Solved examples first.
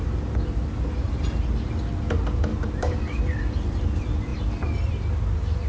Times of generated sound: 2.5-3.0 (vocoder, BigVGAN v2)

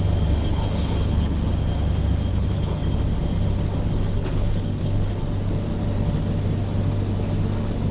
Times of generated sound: 0.5-1.5 (codec, HILCodec); 2.3-2.8; 4.2-5.1

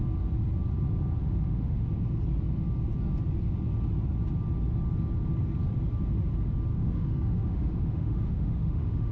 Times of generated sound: 1.2-1.9 (autoencoder, DAC-VAE); 6.7-9.1

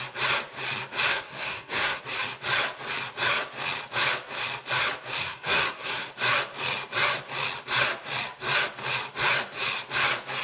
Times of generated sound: 1.1-2.0 (codec, SNAC); 5.2-6.1